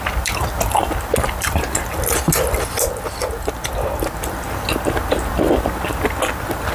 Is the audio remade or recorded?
recorded